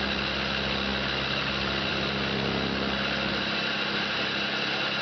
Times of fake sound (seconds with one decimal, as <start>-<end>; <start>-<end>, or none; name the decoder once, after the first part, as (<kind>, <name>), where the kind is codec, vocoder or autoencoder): none